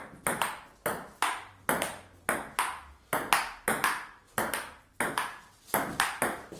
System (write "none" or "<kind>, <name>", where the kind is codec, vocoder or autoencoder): none